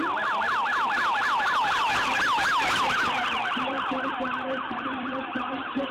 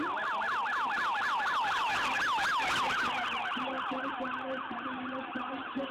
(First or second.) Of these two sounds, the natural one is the second